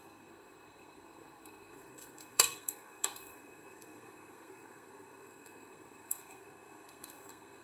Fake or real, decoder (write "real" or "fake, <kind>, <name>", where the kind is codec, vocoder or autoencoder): fake, codec, SNAC